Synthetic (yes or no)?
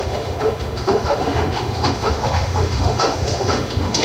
yes